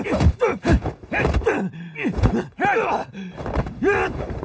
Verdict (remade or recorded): remade